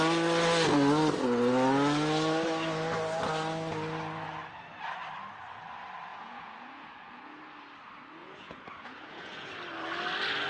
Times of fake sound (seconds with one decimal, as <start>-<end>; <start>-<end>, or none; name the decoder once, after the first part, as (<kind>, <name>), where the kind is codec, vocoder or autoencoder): 6.1-7.4 (vocoder, Vocos); 8.2-9.5